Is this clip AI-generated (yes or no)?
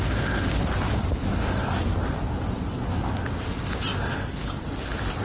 no